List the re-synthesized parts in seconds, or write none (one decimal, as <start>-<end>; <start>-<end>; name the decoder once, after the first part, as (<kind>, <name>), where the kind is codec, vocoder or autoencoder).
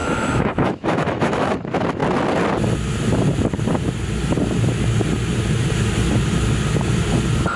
0.0-1.5 (autoencoder, DAC-VAE)